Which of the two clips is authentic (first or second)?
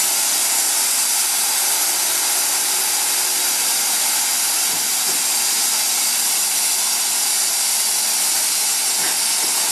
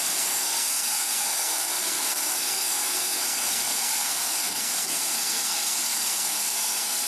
first